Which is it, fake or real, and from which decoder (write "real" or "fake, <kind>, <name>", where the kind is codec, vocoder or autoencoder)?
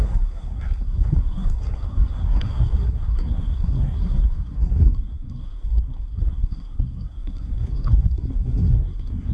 fake, codec, SNAC